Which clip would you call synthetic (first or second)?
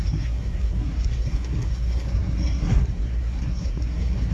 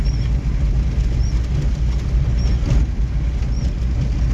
first